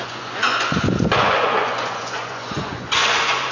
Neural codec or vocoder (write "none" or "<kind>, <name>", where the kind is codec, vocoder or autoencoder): vocoder, Vocos